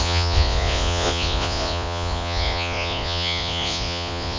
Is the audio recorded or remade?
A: remade